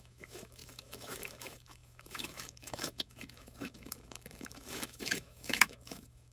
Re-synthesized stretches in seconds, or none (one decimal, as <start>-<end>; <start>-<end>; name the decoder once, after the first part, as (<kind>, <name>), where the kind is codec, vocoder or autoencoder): 0.0-6.3 (autoencoder, DAC-VAE)